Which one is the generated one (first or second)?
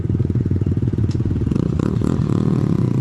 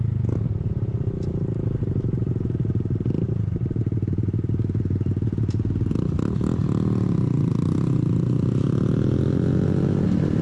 first